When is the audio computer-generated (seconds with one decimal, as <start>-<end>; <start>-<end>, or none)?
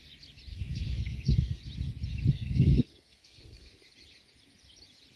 0.5-1.6; 2.3-3.7